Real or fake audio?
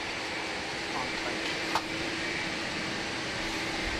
fake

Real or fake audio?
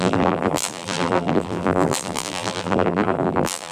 fake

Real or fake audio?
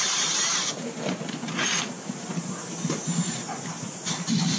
fake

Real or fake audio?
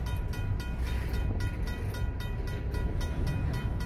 real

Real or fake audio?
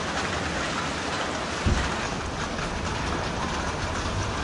fake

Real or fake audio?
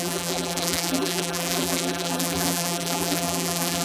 fake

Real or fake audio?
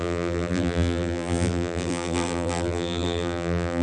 fake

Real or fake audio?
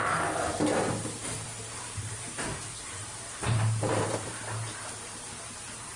fake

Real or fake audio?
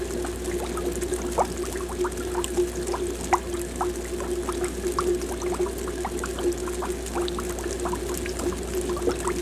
real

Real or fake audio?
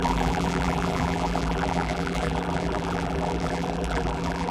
fake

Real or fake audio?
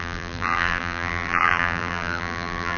fake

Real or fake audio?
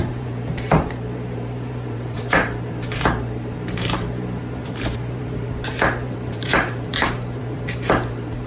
fake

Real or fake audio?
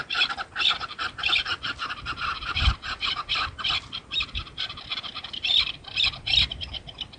fake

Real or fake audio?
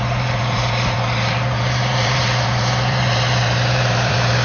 fake